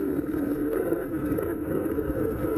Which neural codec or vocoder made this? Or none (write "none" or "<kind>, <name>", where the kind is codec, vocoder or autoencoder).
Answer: codec, SNAC